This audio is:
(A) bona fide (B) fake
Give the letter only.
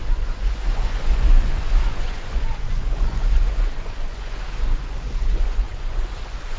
B